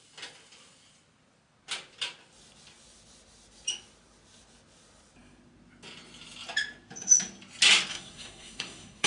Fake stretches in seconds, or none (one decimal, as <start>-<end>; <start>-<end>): 7.9-9.1